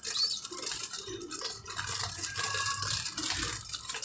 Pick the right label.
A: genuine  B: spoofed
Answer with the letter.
B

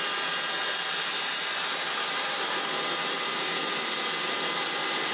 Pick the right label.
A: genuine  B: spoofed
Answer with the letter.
A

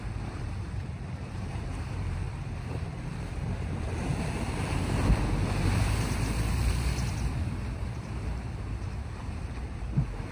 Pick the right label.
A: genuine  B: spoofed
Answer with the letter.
B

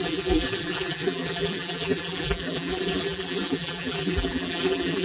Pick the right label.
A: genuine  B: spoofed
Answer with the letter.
B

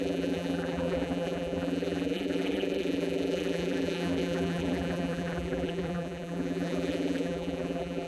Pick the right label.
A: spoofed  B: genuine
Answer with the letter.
A